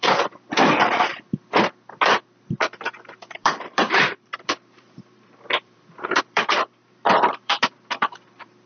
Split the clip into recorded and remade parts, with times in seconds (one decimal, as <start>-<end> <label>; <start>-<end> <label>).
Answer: 0.0-1.1 remade; 1.1-2.4 recorded; 2.4-8.7 remade